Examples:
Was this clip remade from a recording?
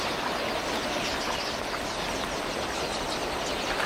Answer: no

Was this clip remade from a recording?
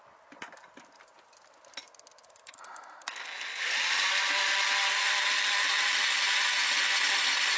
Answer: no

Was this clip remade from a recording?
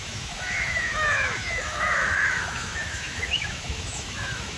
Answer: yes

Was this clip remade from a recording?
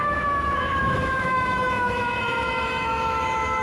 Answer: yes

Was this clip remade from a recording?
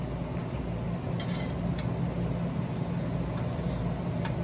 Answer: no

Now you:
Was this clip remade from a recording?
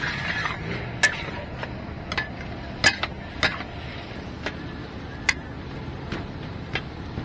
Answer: no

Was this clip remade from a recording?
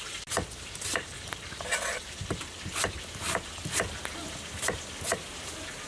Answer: no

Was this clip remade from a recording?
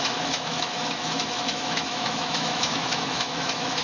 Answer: yes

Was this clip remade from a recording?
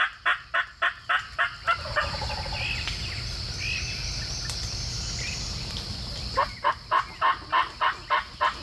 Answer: no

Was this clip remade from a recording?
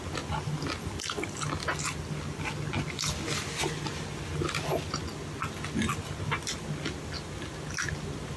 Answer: no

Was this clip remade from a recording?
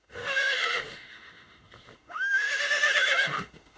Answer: yes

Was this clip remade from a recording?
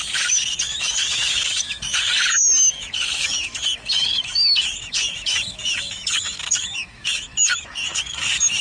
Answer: yes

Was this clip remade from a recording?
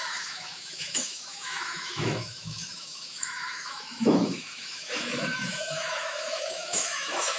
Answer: yes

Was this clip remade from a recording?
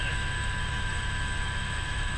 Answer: yes